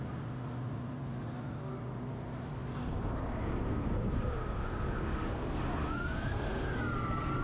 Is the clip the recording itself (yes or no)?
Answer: yes